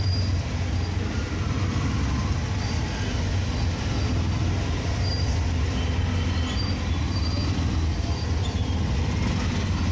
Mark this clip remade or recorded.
recorded